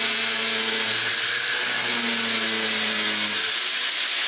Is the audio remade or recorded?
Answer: recorded